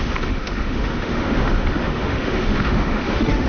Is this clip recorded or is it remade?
remade